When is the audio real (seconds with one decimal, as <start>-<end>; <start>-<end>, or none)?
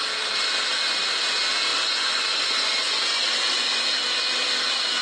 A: 0.0-1.7; 3.9-5.0